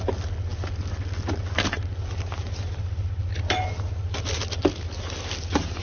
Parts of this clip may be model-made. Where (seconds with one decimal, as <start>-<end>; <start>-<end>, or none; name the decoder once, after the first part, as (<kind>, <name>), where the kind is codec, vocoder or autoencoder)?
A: none